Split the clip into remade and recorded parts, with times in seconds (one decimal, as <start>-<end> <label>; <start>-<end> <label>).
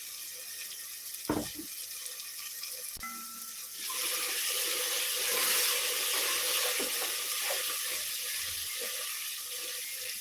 0.0-10.2 recorded